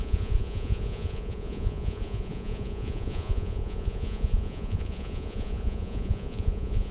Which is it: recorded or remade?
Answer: remade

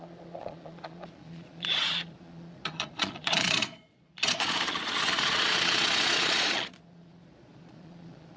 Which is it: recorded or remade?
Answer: remade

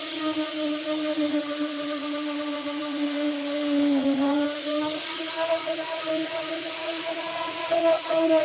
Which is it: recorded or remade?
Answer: remade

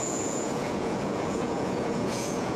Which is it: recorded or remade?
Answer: remade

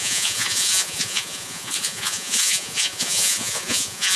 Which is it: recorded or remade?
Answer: remade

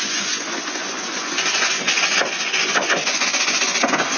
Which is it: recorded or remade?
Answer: remade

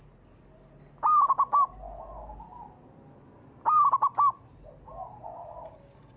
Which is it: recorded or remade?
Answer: recorded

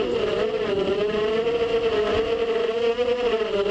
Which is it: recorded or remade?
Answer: recorded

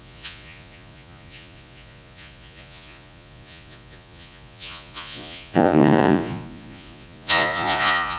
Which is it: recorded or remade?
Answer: remade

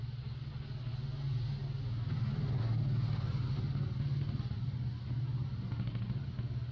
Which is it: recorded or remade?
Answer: recorded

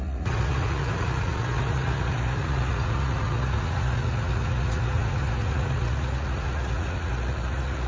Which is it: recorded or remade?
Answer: remade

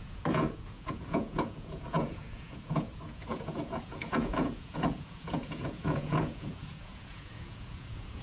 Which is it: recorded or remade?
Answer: remade